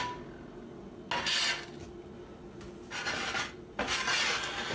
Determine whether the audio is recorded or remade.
recorded